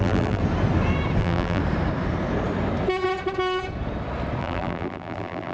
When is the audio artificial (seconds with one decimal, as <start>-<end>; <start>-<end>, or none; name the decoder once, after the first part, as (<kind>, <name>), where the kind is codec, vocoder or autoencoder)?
0.0-0.4 (vocoder, BigVGAN v2); 1.2-1.6; 4.4-5.5